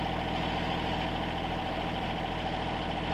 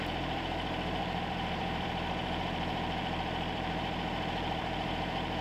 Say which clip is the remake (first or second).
second